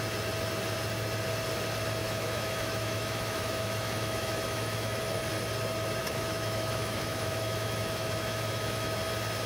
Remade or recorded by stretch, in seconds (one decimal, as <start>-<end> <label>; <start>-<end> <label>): 0.0-2.0 recorded; 2.0-5.0 remade; 5.0-6.0 recorded; 6.0-9.0 remade; 9.0-9.5 recorded